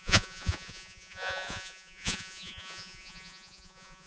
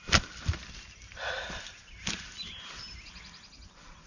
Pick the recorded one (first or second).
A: second